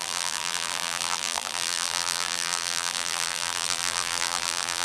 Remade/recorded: remade